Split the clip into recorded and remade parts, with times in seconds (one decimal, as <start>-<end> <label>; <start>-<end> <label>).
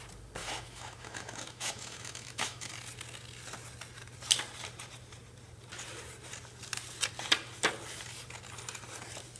0.0-0.4 recorded; 0.4-2.7 remade; 2.7-9.4 recorded